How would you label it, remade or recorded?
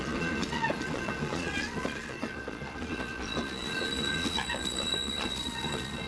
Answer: remade